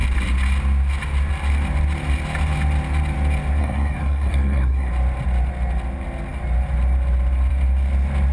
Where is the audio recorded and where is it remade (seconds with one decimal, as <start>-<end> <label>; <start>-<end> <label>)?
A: 0.0-3.6 recorded; 3.6-4.9 remade; 4.9-8.3 recorded